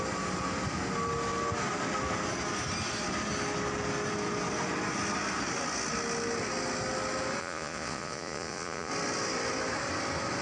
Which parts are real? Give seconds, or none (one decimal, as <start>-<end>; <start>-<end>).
0.0-7.4; 8.9-10.4

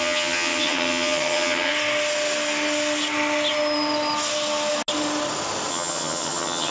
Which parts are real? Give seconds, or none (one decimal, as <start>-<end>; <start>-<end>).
1.7-5.7